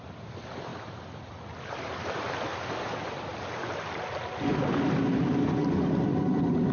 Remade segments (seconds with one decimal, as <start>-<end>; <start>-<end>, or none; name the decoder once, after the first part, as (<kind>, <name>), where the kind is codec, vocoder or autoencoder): none